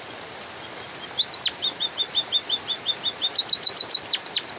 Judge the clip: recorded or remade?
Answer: recorded